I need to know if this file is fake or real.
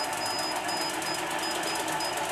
real